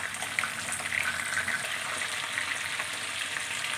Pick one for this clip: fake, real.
real